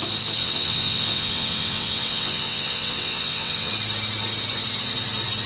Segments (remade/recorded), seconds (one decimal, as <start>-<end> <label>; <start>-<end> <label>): 0.0-0.4 recorded; 0.4-3.7 remade; 3.7-5.5 recorded